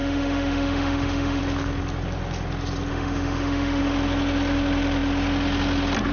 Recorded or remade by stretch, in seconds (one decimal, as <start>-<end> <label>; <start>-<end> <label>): 0.0-1.4 remade; 1.4-2.9 recorded; 2.9-3.8 remade; 3.8-6.1 recorded